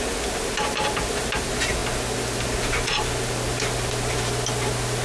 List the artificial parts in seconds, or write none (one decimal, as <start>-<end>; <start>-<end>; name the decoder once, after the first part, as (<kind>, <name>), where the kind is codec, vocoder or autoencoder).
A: none